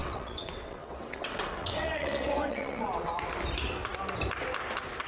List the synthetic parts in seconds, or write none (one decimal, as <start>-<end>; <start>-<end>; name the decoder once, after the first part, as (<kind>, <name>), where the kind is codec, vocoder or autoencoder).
0.0-3.1 (vocoder, WaveNeXt)